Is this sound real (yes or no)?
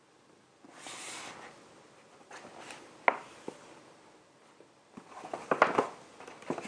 yes